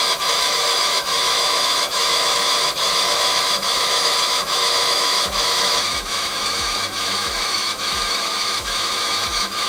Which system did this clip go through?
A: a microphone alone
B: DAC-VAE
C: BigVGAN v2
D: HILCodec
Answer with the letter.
B